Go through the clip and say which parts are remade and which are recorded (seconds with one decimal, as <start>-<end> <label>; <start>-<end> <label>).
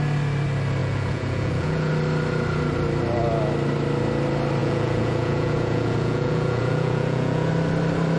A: 0.0-0.8 recorded; 0.8-1.9 remade; 1.9-4.6 recorded; 4.6-7.5 remade; 7.5-8.2 recorded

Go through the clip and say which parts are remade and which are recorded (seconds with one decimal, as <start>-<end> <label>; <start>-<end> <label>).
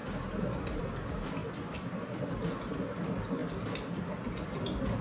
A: 0.0-5.0 recorded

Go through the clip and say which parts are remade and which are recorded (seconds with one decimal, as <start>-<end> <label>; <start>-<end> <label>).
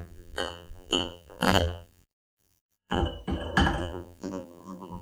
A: 0.0-3.0 remade; 3.0-3.8 recorded; 3.8-5.0 remade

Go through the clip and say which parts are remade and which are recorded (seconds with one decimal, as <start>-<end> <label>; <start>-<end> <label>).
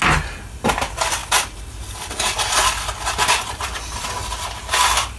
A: 0.0-5.2 recorded